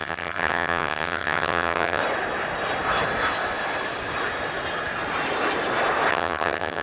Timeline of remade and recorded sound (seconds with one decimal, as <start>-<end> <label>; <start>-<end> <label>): 0.0-2.0 remade; 2.0-6.1 recorded; 6.1-6.8 remade